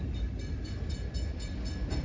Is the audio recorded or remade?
recorded